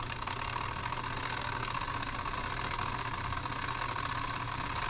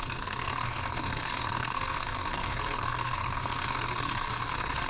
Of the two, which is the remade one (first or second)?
second